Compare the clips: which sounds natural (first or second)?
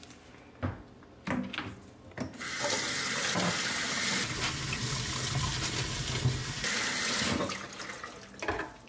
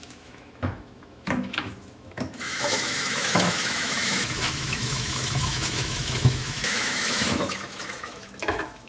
first